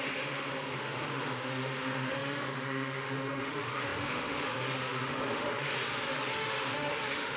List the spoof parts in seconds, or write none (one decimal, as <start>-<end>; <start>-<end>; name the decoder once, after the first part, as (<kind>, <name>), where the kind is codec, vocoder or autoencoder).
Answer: 0.0-7.4 (autoencoder, DAC-VAE)